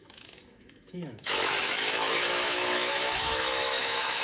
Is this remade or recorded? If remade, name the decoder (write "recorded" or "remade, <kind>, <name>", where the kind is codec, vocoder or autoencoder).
remade, autoencoder, DAC-VAE